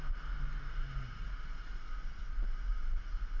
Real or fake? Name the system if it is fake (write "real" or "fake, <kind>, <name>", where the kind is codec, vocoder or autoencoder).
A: real